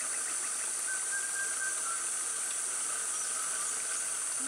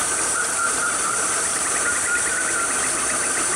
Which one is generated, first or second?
second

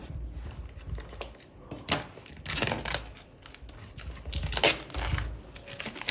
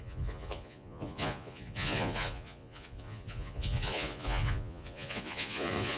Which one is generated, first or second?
second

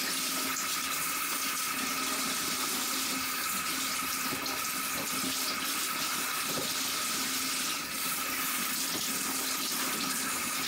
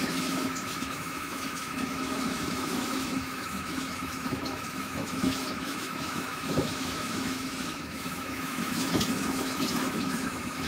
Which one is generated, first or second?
second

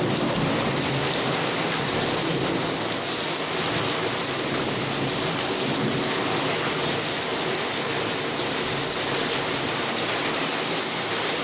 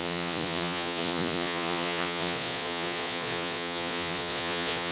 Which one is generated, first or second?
second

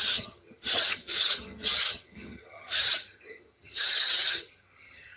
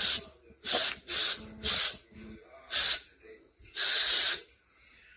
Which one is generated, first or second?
first